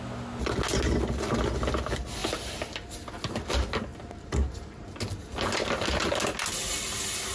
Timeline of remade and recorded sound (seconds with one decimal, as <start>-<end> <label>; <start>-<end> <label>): 0.0-3.9 recorded; 3.9-5.0 remade; 5.0-7.3 recorded